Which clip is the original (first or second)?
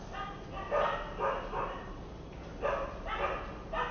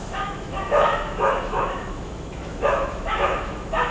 first